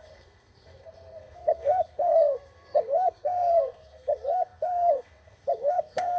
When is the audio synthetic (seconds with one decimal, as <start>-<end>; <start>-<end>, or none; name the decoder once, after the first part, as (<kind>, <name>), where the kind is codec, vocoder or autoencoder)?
0.0-6.2 (codec, SNAC)